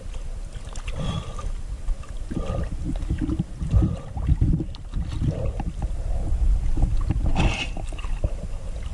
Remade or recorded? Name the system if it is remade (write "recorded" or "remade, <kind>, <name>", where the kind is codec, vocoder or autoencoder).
recorded